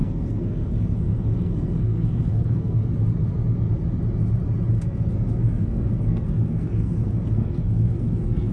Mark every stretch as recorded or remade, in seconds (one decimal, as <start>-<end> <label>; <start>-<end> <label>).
0.0-2.8 remade; 2.8-4.7 recorded; 4.7-8.5 remade